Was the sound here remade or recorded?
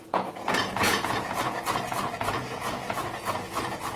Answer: remade